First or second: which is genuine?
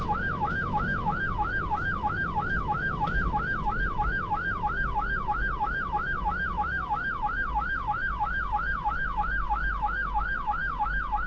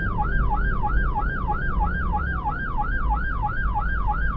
second